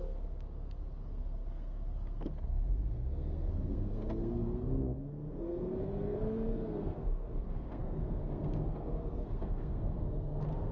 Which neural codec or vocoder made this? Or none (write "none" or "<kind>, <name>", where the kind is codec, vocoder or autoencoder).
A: codec, SNAC